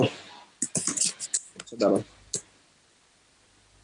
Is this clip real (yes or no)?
yes